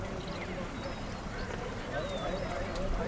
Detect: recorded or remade recorded